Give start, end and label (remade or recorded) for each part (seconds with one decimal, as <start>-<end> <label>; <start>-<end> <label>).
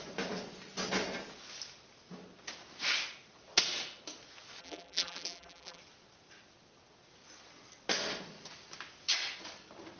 0.0-4.6 recorded; 4.6-5.8 remade; 5.8-10.0 recorded